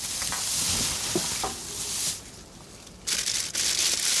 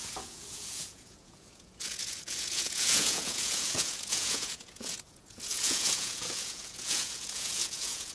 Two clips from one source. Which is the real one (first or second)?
first